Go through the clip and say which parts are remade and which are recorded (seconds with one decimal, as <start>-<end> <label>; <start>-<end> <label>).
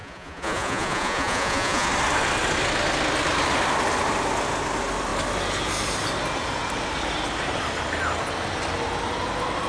0.0-1.9 remade; 1.9-9.7 recorded